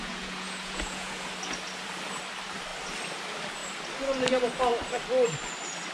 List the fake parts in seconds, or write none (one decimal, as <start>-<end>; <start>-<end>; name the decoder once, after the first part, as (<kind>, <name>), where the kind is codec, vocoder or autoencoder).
0.0-1.3 (vocoder, Vocos)